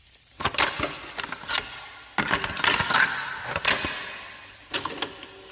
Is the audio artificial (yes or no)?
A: no